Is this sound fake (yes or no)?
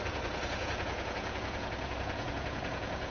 yes